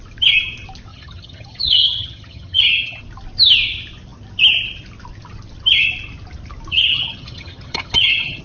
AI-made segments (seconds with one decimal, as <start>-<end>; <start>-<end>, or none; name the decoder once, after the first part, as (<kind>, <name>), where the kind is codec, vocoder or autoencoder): 0.9-3.0 (vocoder, HiFi-GAN); 6.7-8.4